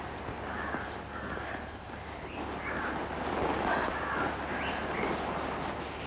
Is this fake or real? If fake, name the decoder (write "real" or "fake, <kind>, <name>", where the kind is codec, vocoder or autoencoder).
real